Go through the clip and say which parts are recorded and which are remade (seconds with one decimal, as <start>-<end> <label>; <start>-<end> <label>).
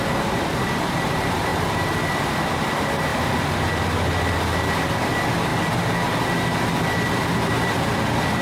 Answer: 0.0-1.5 remade; 1.5-2.7 recorded; 2.7-3.1 remade; 3.1-4.7 recorded; 4.7-5.5 remade; 5.5-7.5 recorded; 7.5-8.4 remade